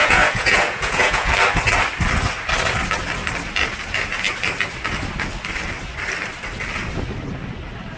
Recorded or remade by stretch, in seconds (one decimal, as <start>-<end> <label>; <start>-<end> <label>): 0.0-1.3 remade; 1.3-8.0 recorded